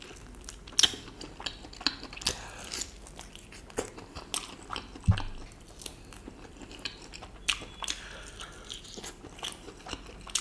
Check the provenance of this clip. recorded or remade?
recorded